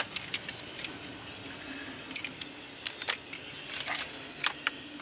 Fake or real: real